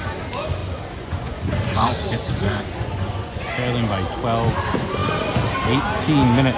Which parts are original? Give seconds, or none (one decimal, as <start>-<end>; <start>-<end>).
0.0-0.6; 3.5-6.6